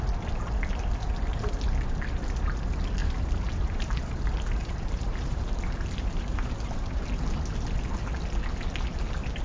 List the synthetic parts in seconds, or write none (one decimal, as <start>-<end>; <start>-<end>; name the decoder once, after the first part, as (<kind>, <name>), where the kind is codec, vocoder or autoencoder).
3.0-7.1 (vocoder, BigVGAN v2)